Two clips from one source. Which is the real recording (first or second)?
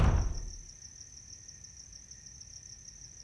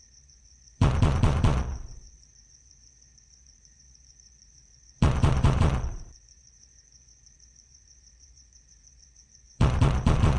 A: first